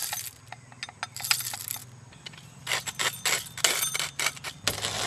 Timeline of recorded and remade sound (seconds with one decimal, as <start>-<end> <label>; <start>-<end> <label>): 0.0-5.1 recorded